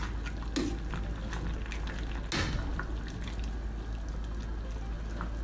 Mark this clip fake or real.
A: real